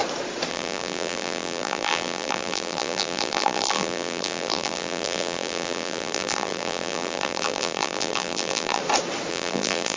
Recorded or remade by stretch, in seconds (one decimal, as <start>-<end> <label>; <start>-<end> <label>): 0.0-0.5 recorded; 0.5-8.8 remade; 8.8-9.3 recorded; 9.3-10.0 remade